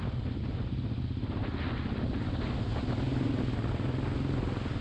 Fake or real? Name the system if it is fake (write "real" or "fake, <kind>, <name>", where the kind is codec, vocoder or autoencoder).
real